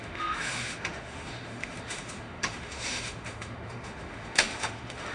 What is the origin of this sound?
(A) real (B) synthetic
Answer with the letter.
B